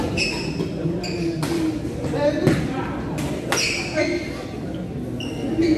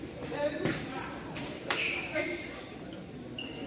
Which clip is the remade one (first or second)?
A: second